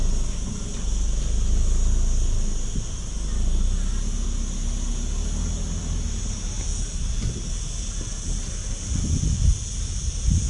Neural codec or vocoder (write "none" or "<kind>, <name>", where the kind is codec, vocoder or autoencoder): none